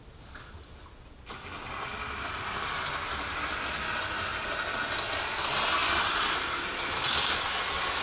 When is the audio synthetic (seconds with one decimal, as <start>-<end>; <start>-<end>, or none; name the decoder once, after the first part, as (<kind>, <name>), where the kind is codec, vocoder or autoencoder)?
none